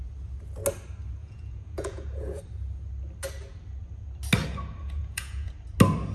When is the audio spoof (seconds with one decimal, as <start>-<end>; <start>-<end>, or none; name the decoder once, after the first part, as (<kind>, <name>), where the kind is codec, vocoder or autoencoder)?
1.2-2.4 (vocoder, Vocos); 4.8-5.5